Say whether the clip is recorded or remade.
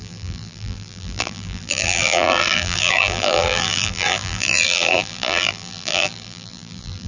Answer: remade